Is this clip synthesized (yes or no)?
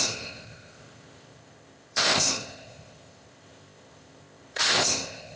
yes